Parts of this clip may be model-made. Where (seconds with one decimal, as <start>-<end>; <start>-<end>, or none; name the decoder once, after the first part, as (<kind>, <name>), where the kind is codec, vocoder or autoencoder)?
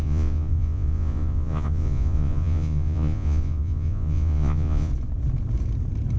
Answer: 0.0-4.9 (vocoder, Vocos)